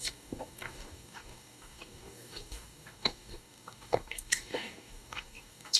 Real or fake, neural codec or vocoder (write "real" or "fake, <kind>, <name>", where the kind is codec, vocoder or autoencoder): fake, codec, DAC